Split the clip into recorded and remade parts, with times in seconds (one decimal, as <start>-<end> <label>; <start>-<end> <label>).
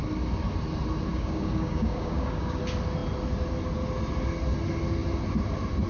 0.0-1.1 recorded; 1.1-2.6 remade; 2.6-5.9 recorded